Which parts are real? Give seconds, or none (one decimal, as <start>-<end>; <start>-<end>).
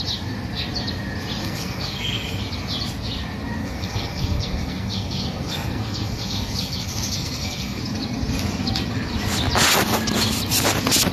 0.0-1.4; 2.4-3.6; 7.8-11.1